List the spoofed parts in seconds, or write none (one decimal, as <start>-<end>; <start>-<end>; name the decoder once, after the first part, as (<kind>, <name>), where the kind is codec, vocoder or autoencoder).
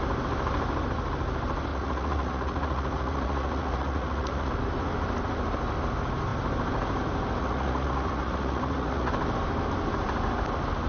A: 1.7-4.5 (vocoder, Vocos); 7.4-9.1